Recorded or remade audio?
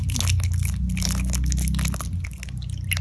recorded